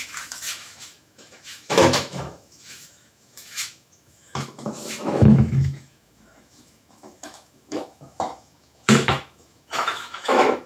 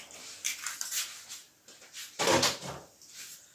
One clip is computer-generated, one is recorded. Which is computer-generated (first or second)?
first